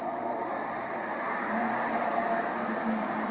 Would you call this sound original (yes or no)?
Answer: no